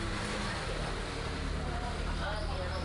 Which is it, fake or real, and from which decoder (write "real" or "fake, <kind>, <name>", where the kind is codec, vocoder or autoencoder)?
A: real